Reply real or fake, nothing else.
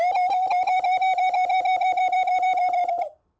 real